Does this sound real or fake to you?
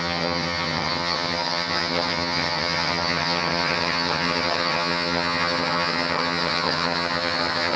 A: fake